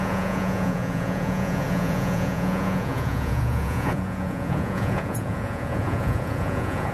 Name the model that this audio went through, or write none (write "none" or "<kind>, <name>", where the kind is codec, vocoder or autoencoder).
vocoder, Vocos